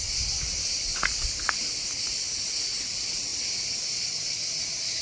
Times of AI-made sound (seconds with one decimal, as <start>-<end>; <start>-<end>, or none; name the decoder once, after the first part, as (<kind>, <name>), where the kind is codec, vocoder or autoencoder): none